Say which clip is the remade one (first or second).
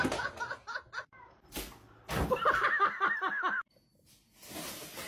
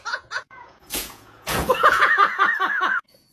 second